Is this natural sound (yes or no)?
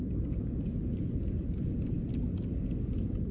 yes